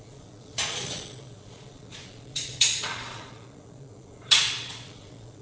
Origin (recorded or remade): remade